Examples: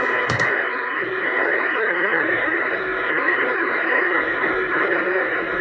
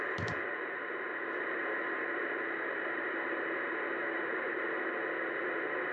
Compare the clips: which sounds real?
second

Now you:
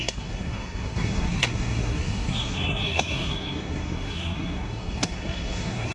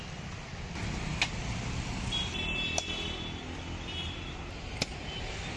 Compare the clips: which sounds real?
second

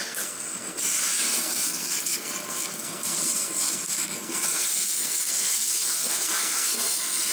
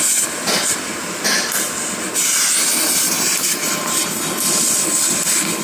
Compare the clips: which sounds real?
second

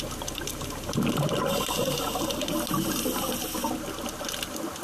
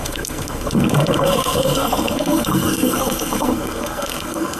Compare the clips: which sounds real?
first